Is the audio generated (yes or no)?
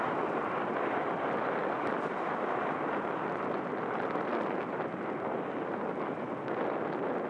no